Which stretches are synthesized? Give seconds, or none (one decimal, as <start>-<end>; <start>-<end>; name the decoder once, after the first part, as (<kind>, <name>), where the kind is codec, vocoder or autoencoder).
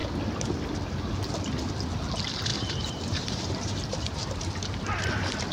2.5-5.0 (vocoder, BigVGAN v2)